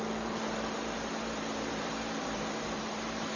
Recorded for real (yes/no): no